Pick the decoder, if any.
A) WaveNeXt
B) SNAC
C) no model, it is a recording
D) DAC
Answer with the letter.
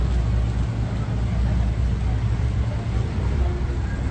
C